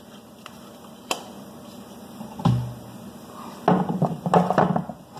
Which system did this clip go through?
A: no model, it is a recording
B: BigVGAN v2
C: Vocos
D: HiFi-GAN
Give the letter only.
A